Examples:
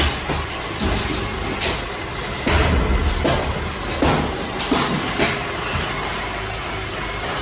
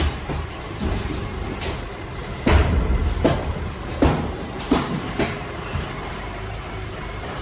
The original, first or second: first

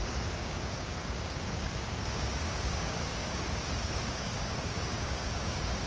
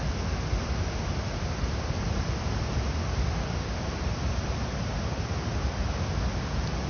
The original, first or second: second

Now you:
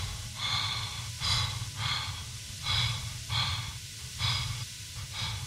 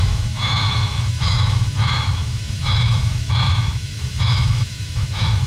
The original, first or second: first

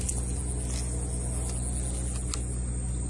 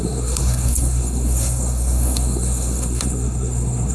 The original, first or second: first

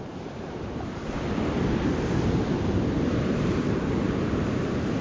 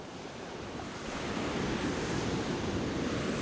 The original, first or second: first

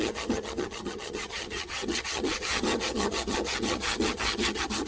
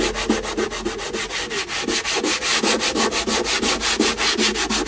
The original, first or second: second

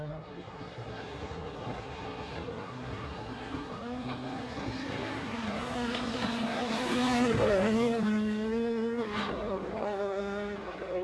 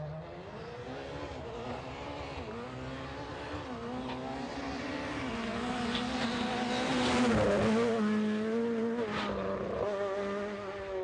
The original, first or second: second